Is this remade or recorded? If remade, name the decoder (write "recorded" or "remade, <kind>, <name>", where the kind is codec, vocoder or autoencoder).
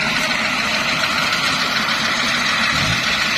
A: recorded